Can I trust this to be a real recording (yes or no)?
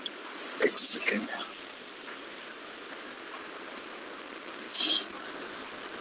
yes